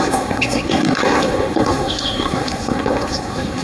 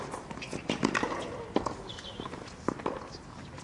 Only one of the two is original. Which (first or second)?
second